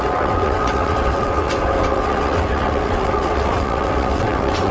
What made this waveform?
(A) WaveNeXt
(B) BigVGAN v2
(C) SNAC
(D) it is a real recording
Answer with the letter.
A